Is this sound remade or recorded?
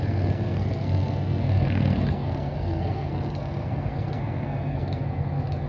remade